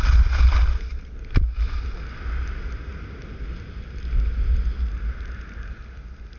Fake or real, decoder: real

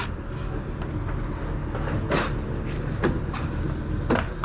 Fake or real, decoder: real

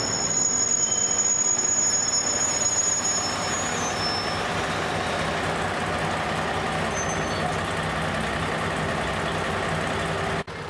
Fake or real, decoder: real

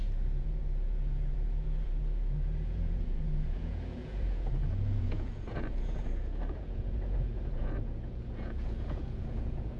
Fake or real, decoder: fake, vocoder, Vocos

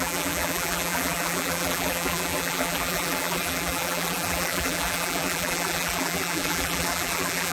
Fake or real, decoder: fake, vocoder, BigVGAN v2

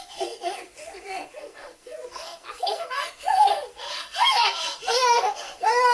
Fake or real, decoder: fake, codec, SNAC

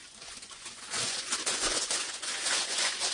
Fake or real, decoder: fake, vocoder, Vocos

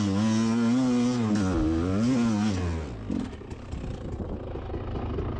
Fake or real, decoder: real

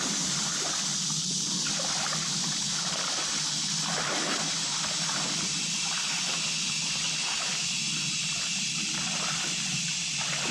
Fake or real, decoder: real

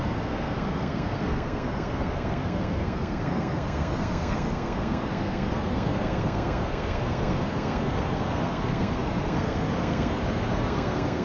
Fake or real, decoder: fake, codec, SNAC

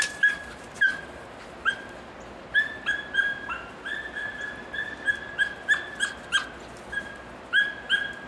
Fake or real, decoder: real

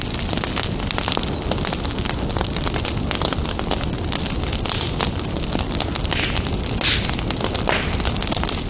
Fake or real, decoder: real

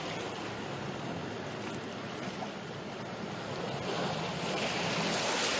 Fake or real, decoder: real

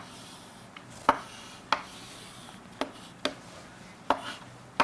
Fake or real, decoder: real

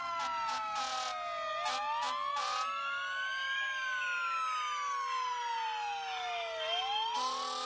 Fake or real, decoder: real